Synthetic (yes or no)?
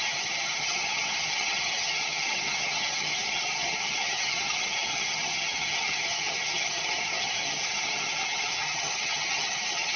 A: yes